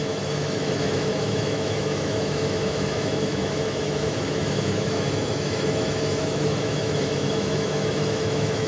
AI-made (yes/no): yes